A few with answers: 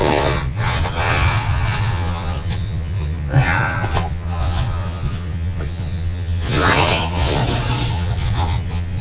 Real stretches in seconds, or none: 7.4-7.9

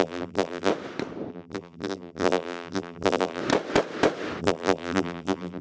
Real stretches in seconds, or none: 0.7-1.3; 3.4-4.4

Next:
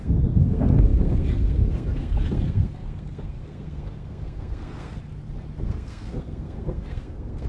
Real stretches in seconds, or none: 5.0-5.6

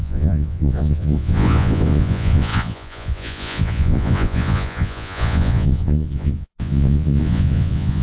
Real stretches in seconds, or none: none

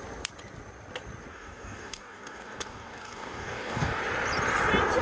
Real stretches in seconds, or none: 0.0-1.3; 4.0-5.0